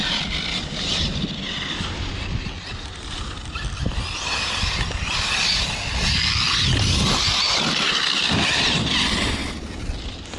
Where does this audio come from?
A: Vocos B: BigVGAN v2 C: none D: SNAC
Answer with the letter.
C